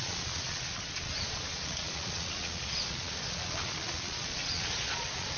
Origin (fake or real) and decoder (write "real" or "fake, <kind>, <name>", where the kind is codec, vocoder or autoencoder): fake, vocoder, Vocos